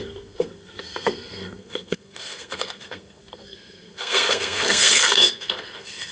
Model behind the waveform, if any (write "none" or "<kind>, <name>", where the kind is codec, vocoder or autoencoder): codec, SNAC